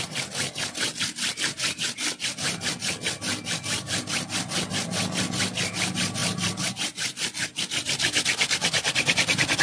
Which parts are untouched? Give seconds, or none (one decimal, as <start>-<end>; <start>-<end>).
0.0-9.6

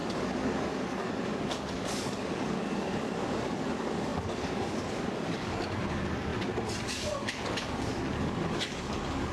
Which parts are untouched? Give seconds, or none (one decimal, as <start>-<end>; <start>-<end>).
6.3-6.8

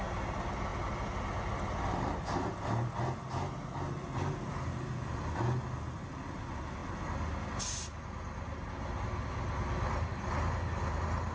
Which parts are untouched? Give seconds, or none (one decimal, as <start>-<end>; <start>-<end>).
0.0-11.3

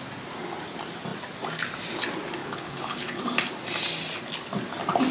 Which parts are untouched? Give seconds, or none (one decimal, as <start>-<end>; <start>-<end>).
0.0-2.4; 3.2-5.1

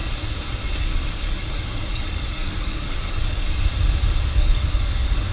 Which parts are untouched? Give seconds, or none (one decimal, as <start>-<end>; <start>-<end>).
0.0-0.8; 3.7-4.3

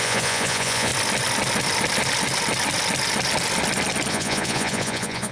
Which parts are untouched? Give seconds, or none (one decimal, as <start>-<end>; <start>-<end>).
0.9-4.1